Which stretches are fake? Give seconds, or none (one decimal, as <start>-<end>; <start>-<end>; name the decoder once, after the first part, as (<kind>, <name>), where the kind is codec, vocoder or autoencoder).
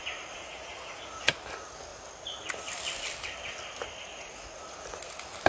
0.0-1.3 (vocoder, Vocos); 4.1-5.1